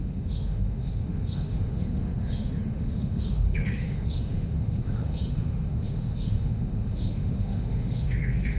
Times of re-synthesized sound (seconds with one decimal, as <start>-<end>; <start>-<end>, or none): 0.0-8.6